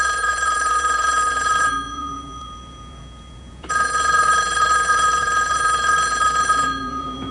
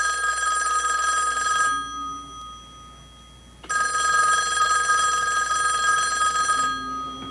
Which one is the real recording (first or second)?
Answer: second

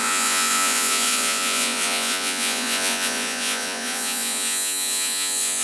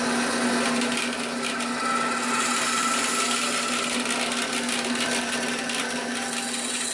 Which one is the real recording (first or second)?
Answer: second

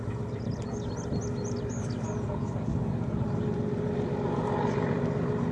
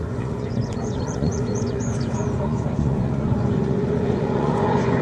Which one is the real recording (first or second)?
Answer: first